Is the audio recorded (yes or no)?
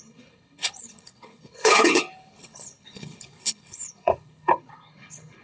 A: no